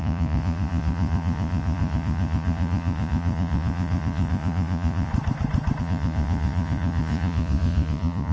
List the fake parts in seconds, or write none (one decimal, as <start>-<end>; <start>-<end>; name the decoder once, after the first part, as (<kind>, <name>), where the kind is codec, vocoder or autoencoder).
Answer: 0.0-5.1 (vocoder, Vocos); 5.8-8.3